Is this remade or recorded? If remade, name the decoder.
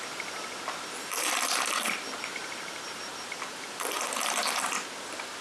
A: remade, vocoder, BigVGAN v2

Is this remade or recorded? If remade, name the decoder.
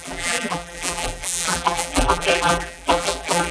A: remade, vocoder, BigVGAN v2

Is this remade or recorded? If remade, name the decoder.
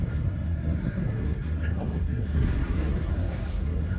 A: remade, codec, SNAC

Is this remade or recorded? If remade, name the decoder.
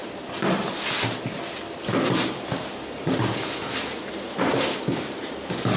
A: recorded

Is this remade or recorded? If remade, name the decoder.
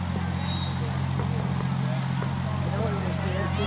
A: recorded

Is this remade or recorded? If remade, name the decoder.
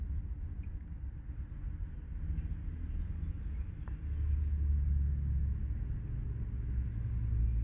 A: recorded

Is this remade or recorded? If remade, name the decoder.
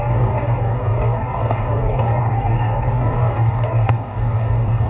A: remade, codec, DAC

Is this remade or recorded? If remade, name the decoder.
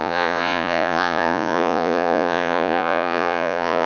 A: remade, vocoder, Vocos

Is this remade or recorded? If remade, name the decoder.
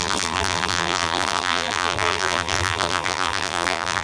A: remade, vocoder, BigVGAN v2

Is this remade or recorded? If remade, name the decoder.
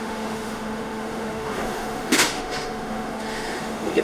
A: remade, autoencoder, DAC-VAE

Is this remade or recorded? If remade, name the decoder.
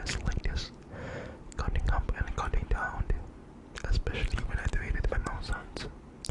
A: recorded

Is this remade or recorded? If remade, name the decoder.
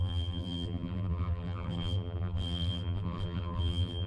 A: remade, vocoder, BigVGAN v2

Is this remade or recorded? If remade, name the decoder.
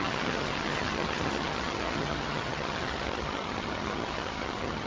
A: remade, vocoder, HiFi-GAN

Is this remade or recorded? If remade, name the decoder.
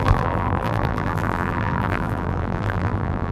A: remade, vocoder, BigVGAN v2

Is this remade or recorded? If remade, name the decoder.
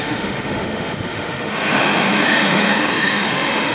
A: remade, autoencoder, DAC-VAE